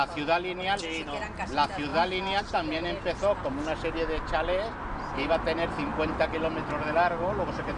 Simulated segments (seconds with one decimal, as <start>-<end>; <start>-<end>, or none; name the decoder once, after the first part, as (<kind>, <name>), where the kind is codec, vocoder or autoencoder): none

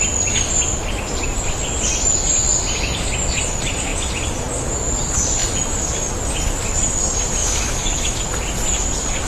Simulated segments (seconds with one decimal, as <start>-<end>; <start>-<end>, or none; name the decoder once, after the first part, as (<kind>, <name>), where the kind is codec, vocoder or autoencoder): 7.4-8.2 (autoencoder, DAC-VAE)